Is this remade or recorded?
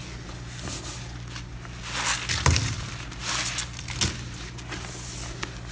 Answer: recorded